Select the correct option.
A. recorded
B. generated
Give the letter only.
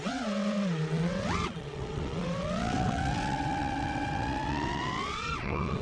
B